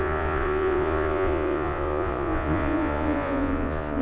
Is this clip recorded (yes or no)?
no